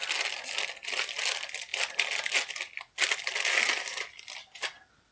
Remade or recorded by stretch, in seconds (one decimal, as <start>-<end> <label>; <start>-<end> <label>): 0.0-5.1 recorded